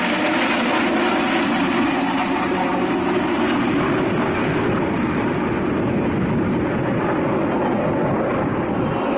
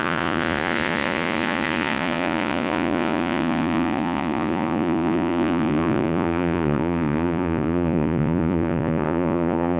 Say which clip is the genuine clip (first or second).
first